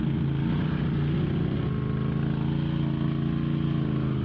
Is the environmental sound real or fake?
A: real